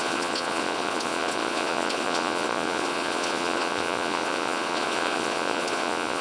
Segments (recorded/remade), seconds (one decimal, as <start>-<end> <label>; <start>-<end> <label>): 0.0-6.2 remade